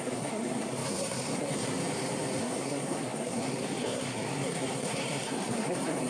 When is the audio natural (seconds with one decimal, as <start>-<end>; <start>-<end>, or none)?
1.8-2.4